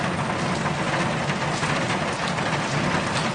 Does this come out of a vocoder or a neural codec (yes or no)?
no